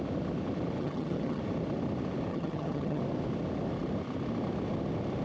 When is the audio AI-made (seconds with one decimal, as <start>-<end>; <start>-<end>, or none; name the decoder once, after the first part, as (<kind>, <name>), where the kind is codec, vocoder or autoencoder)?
0.8-1.4 (vocoder, HiFi-GAN); 2.3-3.0